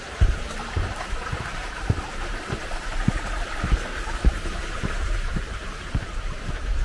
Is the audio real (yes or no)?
no